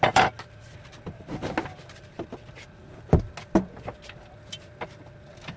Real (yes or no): yes